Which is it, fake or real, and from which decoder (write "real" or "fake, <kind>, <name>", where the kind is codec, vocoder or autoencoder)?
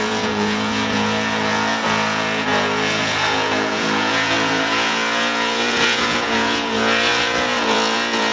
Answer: fake, vocoder, Vocos